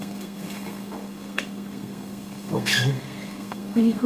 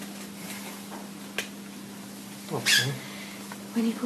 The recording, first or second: second